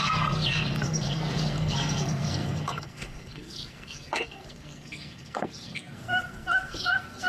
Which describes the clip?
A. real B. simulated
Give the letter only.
B